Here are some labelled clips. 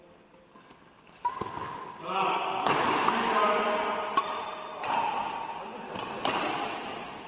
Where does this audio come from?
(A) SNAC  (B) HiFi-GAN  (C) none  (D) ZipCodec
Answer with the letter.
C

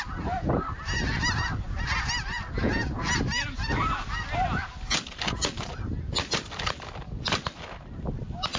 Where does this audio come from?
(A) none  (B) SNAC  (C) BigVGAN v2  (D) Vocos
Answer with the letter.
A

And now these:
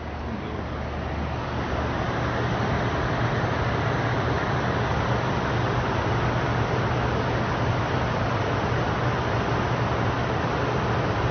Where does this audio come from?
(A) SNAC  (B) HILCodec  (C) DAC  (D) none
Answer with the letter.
D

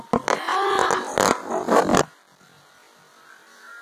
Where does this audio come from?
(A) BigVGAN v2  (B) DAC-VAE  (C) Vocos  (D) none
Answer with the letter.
D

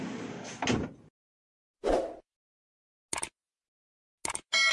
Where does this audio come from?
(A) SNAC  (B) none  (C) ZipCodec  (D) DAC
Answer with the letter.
B